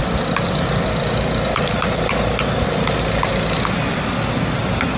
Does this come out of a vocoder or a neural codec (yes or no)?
no